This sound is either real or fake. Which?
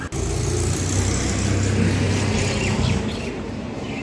real